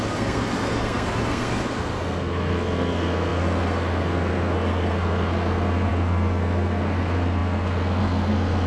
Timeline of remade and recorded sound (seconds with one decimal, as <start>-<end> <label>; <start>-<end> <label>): 0.0-8.7 remade

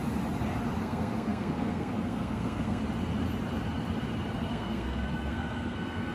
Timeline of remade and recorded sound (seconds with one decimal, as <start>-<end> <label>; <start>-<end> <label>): 0.0-0.8 recorded; 0.8-2.8 remade; 2.8-4.5 recorded; 4.5-6.1 remade

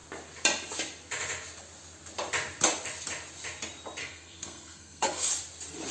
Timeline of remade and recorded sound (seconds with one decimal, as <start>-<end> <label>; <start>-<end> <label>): 0.0-4.0 recorded; 4.0-5.3 remade; 5.3-5.9 recorded

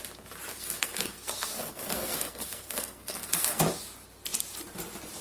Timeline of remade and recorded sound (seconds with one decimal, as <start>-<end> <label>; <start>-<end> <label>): 0.0-0.5 recorded; 0.5-3.6 remade; 3.6-5.2 recorded

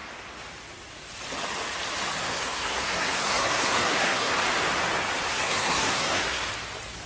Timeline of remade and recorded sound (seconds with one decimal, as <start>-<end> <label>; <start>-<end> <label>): 0.0-2.2 recorded; 2.2-4.3 remade; 4.3-5.3 recorded; 5.3-6.5 remade; 6.5-7.1 recorded

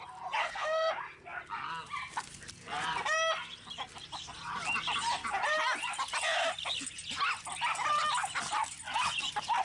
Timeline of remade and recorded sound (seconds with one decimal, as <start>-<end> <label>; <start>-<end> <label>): 0.0-0.4 recorded; 0.4-0.9 remade; 0.9-9.6 recorded